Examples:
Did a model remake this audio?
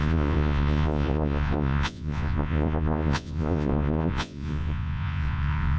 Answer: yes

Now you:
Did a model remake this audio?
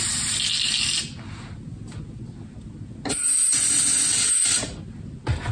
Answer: no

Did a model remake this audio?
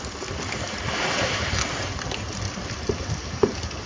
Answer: no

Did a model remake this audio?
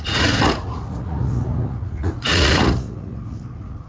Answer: yes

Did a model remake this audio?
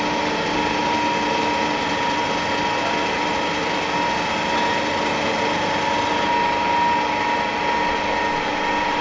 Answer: no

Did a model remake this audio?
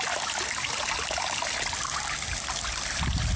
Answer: no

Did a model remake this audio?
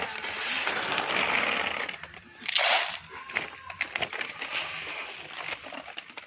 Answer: no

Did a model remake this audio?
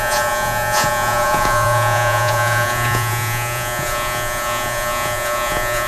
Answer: yes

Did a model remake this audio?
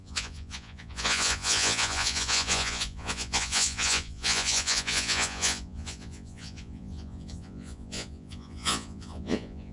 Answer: yes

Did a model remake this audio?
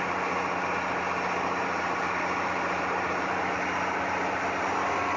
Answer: no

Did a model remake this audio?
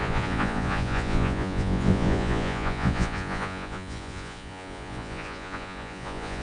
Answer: yes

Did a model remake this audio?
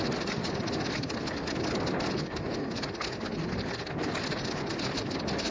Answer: no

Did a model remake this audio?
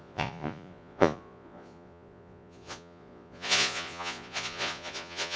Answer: yes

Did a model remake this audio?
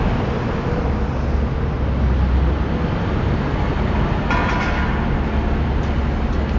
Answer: no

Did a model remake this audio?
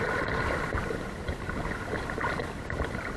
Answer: no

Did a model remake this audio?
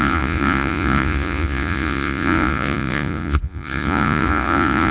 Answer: yes